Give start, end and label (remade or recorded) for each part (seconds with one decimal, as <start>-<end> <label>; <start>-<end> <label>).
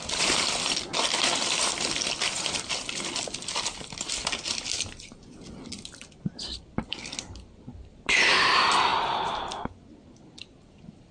0.0-8.9 remade; 8.9-10.4 recorded; 10.4-11.1 remade